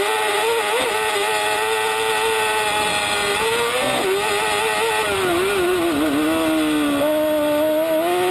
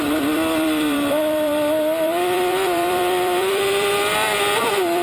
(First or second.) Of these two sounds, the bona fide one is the first